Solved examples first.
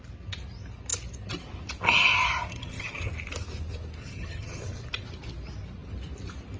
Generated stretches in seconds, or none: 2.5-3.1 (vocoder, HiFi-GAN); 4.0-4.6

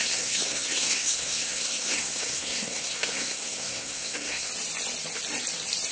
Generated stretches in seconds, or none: 0.0-4.5 (codec, SNAC)

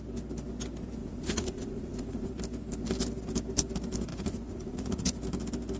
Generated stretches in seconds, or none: 1.0-2.3 (vocoder, Vocos); 4.1-5.2

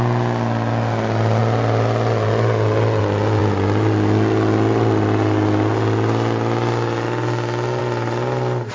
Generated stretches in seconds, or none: none

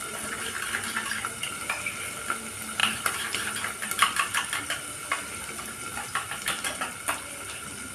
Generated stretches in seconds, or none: 2.8-3.5 (vocoder, BigVGAN v2)

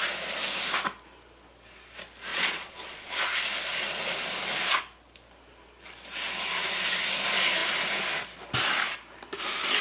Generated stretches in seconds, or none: 2.3-3.1 (vocoder, Vocos)

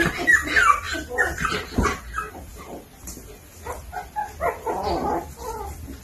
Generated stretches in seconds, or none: 5.0-6.0 (vocoder, BigVGAN v2)